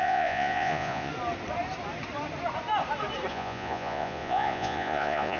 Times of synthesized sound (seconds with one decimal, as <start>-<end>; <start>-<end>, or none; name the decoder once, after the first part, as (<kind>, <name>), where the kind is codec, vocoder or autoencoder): 0.0-1.1 (vocoder, Vocos); 3.3-5.4